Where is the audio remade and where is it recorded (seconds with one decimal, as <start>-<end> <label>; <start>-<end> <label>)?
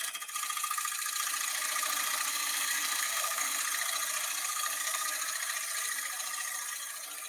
0.0-2.3 recorded; 2.3-3.6 remade; 3.6-4.5 recorded; 4.5-5.2 remade; 5.2-7.3 recorded